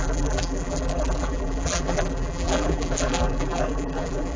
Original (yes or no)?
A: no